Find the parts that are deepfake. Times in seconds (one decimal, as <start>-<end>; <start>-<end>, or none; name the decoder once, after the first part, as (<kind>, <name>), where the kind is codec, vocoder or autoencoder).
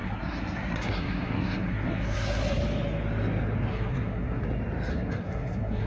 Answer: 0.0-2.6 (codec, SNAC); 3.7-4.4; 4.9-5.9